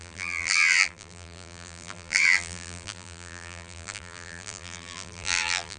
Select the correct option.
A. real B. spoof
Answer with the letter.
B